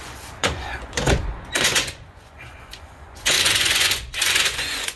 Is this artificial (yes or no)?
yes